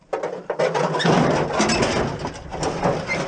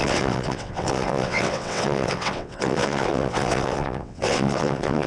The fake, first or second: second